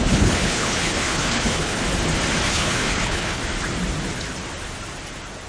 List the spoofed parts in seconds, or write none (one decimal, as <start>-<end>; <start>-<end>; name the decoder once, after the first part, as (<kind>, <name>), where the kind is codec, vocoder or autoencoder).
0.0-1.8 (codec, HILCodec); 2.5-3.4